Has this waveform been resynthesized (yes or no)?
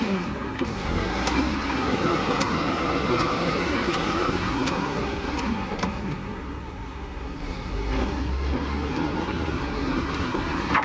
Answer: yes